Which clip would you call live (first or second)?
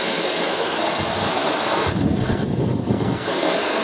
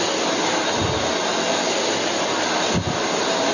second